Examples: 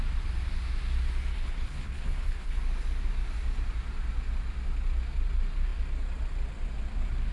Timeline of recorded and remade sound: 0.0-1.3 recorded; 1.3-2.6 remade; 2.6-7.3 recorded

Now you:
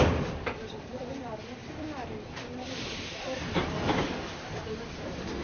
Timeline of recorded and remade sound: 0.0-5.4 remade

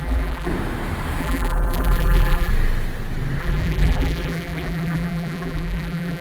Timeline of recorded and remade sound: 0.0-0.5 remade; 0.5-1.2 recorded; 1.2-2.5 remade; 2.5-3.4 recorded; 3.4-6.2 remade

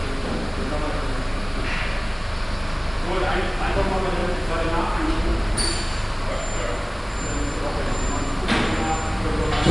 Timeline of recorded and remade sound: 0.0-9.7 recorded

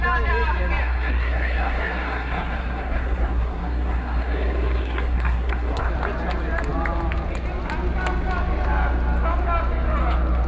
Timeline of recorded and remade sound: 0.0-0.8 recorded; 0.8-5.9 remade; 5.9-10.5 recorded

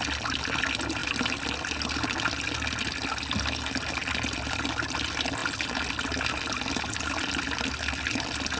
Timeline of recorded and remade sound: 0.0-1.0 recorded; 1.0-1.7 remade; 1.7-8.6 recorded

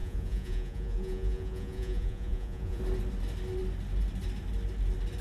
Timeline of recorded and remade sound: 0.0-2.8 remade; 2.8-5.2 recorded

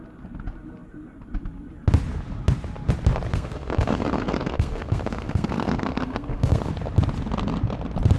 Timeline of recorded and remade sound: 0.0-3.3 recorded; 3.3-6.7 remade; 6.7-8.2 recorded